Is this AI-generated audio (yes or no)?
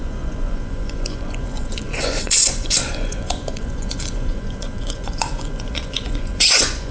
yes